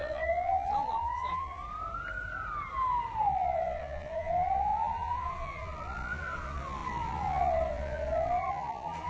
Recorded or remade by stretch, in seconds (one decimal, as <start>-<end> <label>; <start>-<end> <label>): 0.0-1.6 remade; 1.6-3.2 recorded; 3.2-9.1 remade